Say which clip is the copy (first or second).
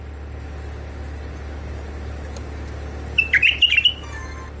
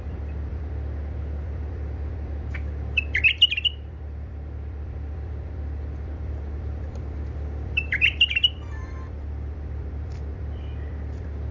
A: second